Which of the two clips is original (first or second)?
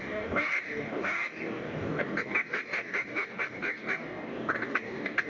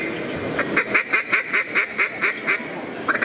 second